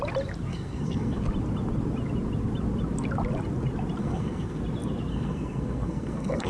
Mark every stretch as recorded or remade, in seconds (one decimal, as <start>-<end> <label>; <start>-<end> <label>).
0.0-0.5 recorded; 0.5-1.2 remade; 1.2-4.0 recorded; 4.0-4.6 remade; 4.6-5.1 recorded; 5.1-6.5 remade